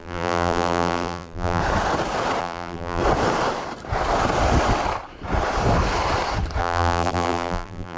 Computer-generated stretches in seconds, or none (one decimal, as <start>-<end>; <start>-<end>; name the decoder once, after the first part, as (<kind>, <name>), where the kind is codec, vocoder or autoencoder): 0.0-1.6 (vocoder, BigVGAN v2); 2.4-3.0; 6.6-8.0